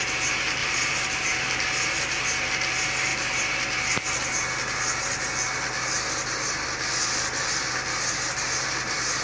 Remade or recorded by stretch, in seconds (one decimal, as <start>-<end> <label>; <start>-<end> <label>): 0.0-0.6 recorded; 0.6-2.0 remade; 2.0-9.2 recorded